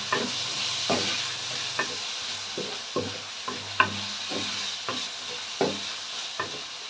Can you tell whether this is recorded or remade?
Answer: recorded